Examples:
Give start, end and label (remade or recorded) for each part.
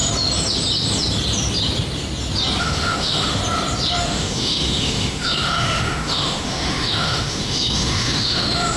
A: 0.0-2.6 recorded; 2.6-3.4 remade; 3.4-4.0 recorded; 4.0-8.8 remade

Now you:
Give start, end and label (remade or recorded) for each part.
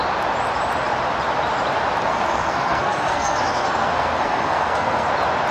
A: 0.0-2.1 recorded; 2.1-5.1 remade; 5.1-5.5 recorded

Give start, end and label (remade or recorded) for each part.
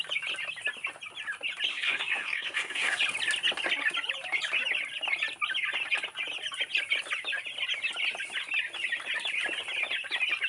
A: 0.0-1.7 recorded; 1.7-3.0 remade; 3.0-10.5 recorded